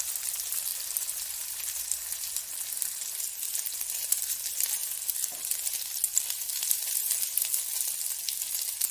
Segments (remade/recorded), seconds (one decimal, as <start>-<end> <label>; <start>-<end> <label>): 0.0-0.7 recorded; 0.7-3.2 remade; 3.2-8.9 recorded